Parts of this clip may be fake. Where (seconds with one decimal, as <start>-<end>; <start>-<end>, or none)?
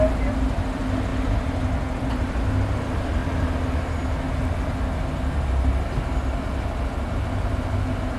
none